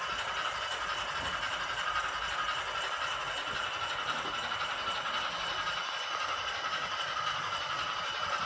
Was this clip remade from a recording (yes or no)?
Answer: no